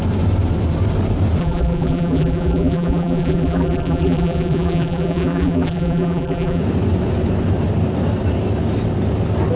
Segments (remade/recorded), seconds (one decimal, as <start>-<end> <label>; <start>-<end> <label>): 0.0-1.4 recorded; 1.4-6.6 remade; 6.6-9.6 recorded